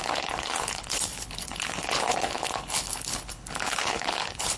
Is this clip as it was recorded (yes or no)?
no